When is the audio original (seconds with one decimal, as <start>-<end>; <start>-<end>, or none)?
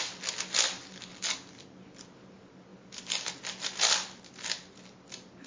0.0-5.5